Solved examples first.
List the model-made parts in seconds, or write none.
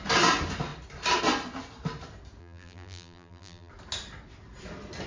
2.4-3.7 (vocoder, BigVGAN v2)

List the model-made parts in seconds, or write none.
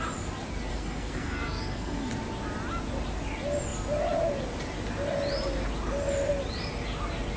0.7-2.1 (codec, SNAC)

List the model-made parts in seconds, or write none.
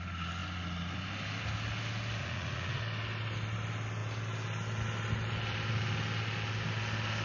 2.2-2.8 (vocoder, Vocos)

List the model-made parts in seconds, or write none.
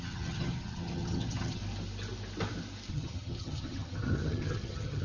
0.0-1.6 (vocoder, HiFi-GAN); 2.9-5.0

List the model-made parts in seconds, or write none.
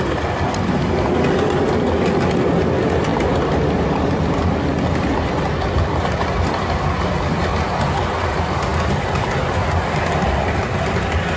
none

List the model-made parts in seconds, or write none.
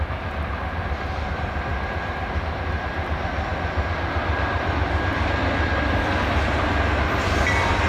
none